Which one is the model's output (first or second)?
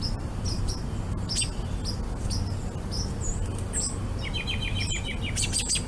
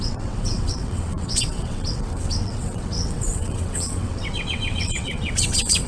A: second